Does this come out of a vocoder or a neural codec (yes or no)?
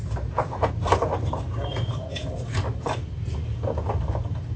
no